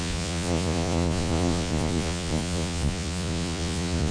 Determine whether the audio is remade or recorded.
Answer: remade